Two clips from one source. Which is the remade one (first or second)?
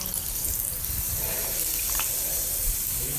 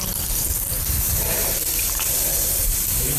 second